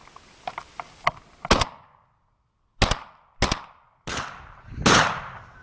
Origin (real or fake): real